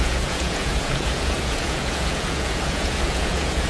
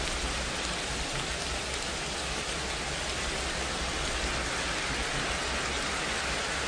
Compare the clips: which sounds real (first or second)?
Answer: second